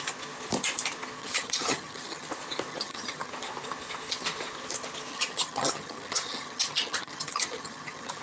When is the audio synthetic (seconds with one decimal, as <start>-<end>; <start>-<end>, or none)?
1.2-2.3; 2.7-3.3; 5.1-8.2